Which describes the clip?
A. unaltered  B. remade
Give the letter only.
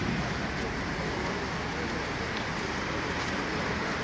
A